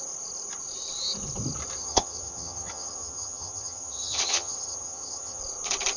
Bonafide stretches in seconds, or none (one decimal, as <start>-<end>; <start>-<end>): 0.0-1.8; 5.4-6.0